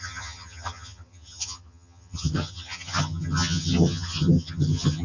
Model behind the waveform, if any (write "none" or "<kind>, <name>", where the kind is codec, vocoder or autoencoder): vocoder, HiFi-GAN